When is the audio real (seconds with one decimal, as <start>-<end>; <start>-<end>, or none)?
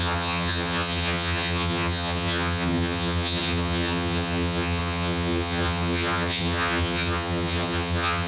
none